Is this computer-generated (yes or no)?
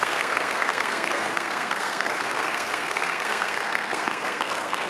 yes